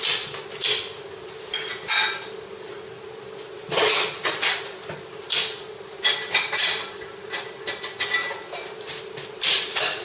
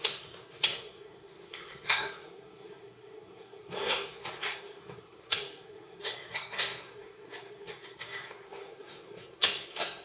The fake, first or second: second